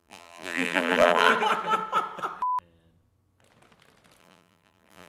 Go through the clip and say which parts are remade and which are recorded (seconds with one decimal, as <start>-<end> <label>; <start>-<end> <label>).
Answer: 0.0-1.3 remade; 1.3-4.2 recorded; 4.2-5.1 remade